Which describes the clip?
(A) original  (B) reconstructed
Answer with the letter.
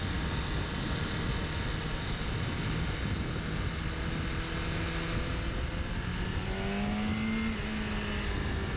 A